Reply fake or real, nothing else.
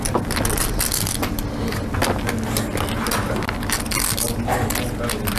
real